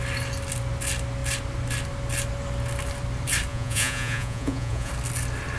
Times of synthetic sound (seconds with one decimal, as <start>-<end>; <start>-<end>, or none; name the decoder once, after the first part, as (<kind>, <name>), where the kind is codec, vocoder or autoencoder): 3.5-4.9 (vocoder, Vocos)

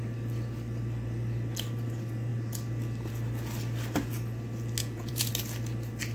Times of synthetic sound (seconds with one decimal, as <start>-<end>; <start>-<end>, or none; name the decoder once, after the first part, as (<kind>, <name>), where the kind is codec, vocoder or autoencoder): 4.8-5.3 (vocoder, Vocos)

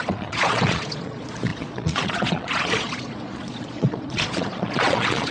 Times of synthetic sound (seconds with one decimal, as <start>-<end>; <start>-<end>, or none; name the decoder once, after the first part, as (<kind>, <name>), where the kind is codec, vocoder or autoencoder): 0.0-5.3 (vocoder, Vocos)